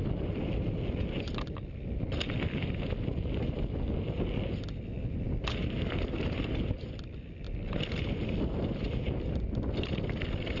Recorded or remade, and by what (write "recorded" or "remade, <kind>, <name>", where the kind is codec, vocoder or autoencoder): recorded